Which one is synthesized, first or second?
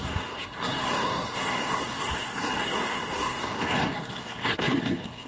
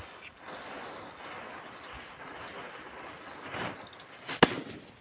first